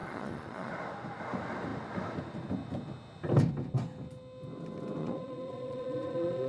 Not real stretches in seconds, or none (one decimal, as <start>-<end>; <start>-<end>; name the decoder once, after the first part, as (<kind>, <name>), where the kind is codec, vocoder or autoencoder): 0.0-0.7 (vocoder, Vocos); 5.0-6.5